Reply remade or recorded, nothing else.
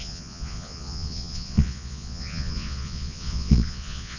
remade